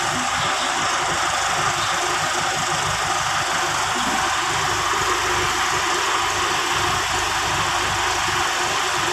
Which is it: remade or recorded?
recorded